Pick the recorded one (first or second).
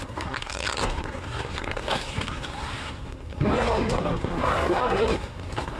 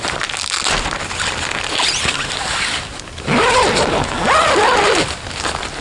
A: second